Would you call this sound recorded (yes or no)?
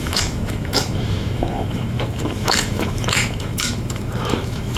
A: no